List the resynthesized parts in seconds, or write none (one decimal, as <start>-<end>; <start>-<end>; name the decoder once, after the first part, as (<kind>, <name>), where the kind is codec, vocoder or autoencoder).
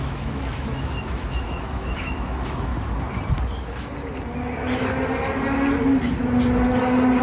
0.0-2.7 (autoencoder, DAC-VAE)